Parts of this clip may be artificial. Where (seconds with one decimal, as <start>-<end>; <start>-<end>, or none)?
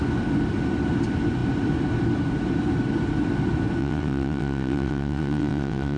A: 3.8-6.0